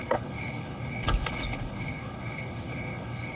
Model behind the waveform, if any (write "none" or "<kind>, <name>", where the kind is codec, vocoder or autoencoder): codec, HILCodec